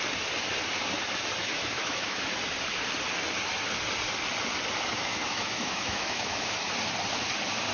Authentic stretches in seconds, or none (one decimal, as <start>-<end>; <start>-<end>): 0.0-1.4; 2.2-4.9; 6.7-7.7